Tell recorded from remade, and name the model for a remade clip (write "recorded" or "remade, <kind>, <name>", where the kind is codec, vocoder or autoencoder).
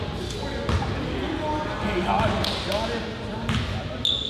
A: recorded